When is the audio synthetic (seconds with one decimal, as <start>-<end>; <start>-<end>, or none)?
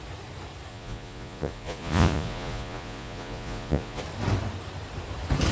0.7-4.0